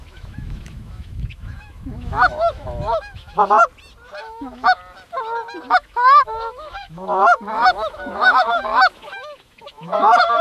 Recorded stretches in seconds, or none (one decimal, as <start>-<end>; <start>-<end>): 3.6-4.2; 4.8-5.7